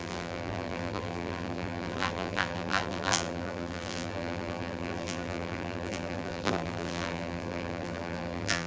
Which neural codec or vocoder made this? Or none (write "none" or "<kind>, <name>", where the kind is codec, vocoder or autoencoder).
vocoder, BigVGAN v2